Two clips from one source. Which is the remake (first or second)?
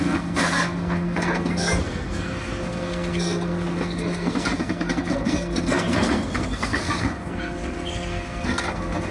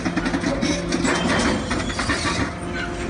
first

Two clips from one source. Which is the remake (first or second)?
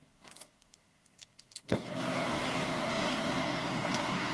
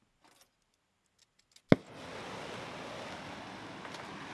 first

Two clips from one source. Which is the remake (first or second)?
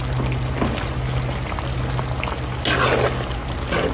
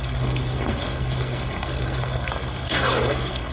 second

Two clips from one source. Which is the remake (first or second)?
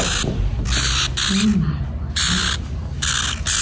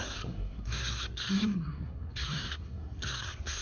second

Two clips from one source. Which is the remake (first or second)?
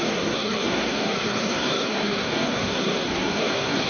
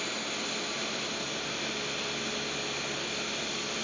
first